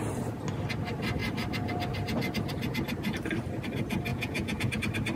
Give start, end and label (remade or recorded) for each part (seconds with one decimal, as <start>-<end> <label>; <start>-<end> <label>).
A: 0.0-4.1 recorded; 4.1-4.8 remade; 4.8-5.2 recorded